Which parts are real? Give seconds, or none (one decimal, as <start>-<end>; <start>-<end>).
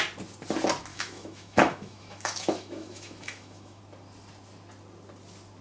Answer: 0.0-0.9; 3.8-5.6